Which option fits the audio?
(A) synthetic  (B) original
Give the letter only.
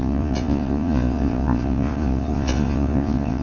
A